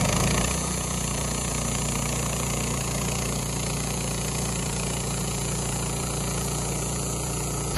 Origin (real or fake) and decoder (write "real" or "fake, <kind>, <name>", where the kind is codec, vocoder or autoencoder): fake, vocoder, Vocos